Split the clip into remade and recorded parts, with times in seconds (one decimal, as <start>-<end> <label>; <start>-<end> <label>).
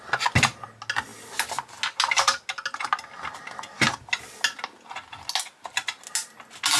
0.0-6.8 recorded